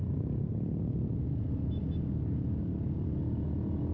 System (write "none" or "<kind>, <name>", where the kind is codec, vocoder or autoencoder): none